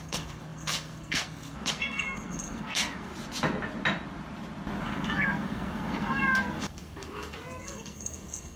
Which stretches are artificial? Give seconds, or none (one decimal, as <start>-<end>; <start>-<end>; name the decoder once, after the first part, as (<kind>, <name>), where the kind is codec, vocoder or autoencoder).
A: 0.0-3.1 (codec, SNAC); 4.8-8.6